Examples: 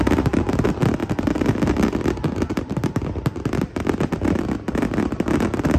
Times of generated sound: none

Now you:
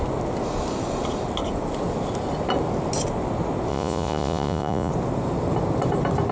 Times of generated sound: 3.7-4.9 (vocoder, Vocos)

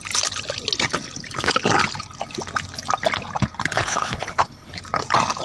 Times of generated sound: 3.6-4.8 (codec, HILCodec)

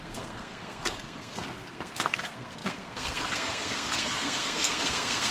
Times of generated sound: 0.0-5.3 (codec, SNAC)